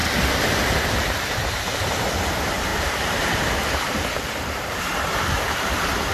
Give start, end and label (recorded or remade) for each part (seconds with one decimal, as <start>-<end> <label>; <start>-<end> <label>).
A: 0.0-0.9 recorded; 0.9-6.1 remade